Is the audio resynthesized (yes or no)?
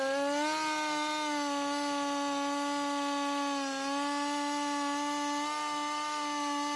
no